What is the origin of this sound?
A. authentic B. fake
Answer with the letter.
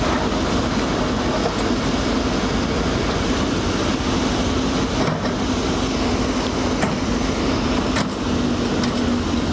A